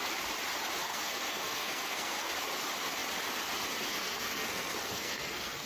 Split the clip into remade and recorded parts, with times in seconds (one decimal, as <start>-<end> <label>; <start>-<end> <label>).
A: 0.0-0.8 recorded; 0.8-2.3 remade; 2.3-4.0 recorded; 4.0-5.7 remade